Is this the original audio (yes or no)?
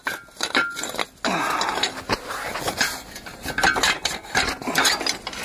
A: yes